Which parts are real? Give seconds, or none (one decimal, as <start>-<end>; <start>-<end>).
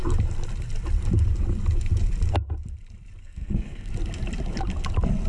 0.0-3.2; 3.9-5.3